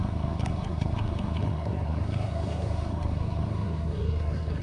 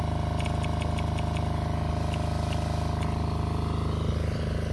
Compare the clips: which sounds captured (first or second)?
second